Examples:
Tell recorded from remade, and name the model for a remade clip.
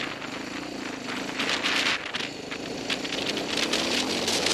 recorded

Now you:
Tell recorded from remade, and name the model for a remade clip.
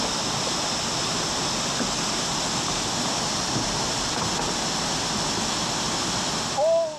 recorded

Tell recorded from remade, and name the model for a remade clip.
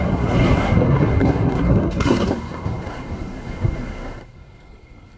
remade, codec, SNAC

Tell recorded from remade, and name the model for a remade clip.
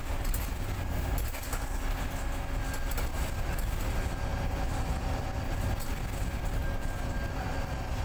recorded